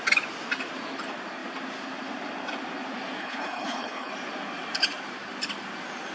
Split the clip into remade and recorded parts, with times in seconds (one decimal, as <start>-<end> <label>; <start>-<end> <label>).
0.0-3.2 recorded; 3.2-4.1 remade; 4.1-6.1 recorded